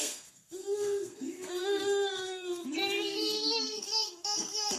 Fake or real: fake